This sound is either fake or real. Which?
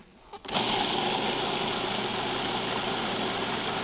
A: real